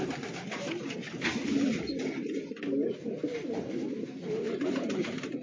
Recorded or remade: recorded